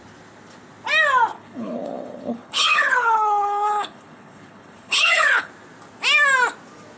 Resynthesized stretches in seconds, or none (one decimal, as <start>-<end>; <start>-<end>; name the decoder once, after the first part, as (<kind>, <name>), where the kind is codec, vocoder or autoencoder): 1.3-5.5 (codec, HILCodec)